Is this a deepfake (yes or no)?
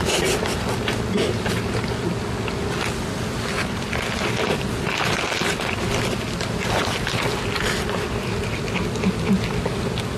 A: no